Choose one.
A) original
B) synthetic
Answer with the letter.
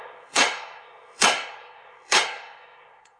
B